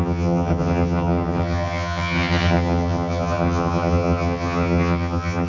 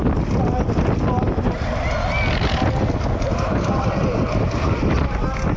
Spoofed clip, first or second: first